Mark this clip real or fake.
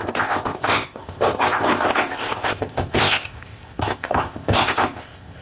fake